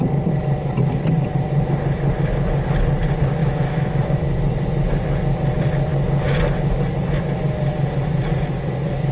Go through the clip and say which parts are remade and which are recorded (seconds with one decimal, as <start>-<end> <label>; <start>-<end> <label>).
0.0-3.4 recorded; 3.4-4.1 remade; 4.1-9.1 recorded

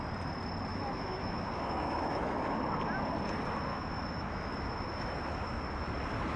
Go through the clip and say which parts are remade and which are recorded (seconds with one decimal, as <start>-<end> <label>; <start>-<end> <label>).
0.0-0.7 recorded; 0.7-2.6 remade; 2.6-3.7 recorded; 3.7-5.6 remade; 5.6-6.4 recorded